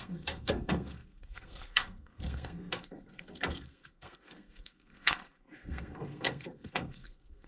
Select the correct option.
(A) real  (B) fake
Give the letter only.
B